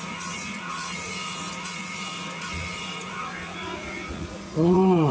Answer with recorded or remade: remade